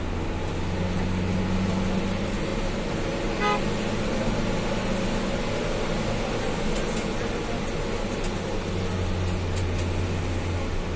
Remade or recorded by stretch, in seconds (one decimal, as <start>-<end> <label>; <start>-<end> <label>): 0.0-11.0 recorded